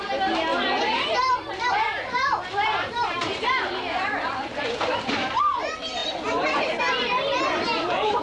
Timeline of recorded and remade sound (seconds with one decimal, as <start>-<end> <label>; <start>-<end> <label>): 0.0-0.5 recorded; 0.5-5.4 remade; 5.4-6.0 recorded; 6.0-7.4 remade; 7.4-8.2 recorded